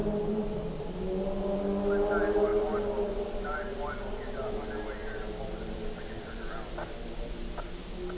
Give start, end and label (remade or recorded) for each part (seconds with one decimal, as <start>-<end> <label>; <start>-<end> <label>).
0.0-0.9 remade; 0.9-8.2 recorded